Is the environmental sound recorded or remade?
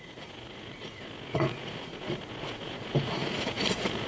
remade